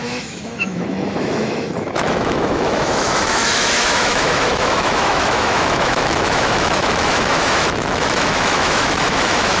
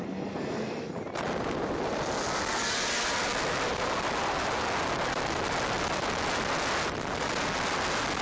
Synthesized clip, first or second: first